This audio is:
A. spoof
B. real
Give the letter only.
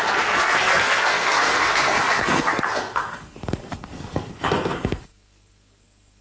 A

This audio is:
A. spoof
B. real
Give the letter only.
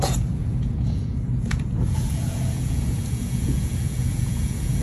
A